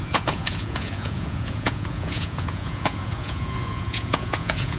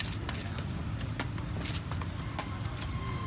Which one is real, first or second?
second